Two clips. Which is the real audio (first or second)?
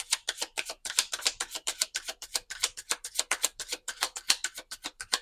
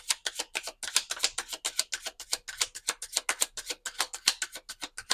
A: second